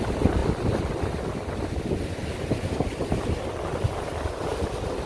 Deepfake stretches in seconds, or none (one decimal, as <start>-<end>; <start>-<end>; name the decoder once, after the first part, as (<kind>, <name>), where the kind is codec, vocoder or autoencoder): none